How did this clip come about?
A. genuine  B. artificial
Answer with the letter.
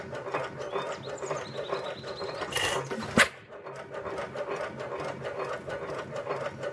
A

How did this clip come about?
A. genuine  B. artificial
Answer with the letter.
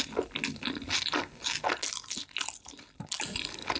A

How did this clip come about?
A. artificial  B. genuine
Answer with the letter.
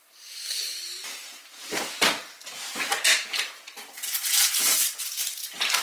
B